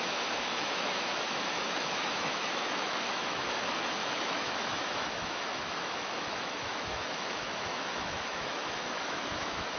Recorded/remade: remade